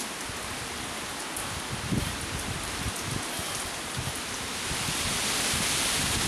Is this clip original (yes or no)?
yes